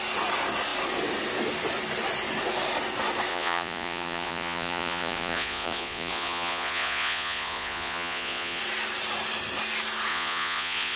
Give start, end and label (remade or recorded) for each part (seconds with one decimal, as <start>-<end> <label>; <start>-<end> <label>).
0.0-3.3 recorded; 3.3-8.6 remade; 8.6-10.1 recorded; 10.1-11.0 remade